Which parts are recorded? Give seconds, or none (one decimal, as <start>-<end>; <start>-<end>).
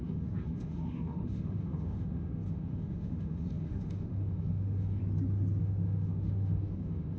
5.0-5.6